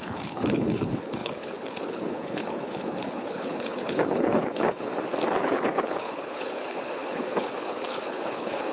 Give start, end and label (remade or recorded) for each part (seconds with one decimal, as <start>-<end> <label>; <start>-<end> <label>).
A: 0.0-4.9 remade; 4.9-5.4 recorded; 5.4-8.7 remade